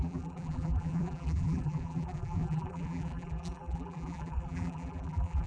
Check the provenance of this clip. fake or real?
fake